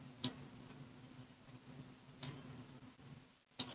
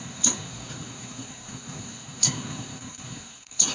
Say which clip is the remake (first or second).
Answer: second